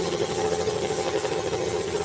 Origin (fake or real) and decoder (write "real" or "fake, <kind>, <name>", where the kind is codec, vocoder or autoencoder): fake, vocoder, HiFi-GAN